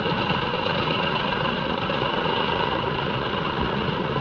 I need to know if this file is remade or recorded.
remade